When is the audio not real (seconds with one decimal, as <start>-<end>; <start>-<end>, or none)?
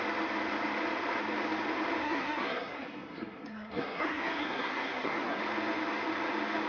2.0-5.4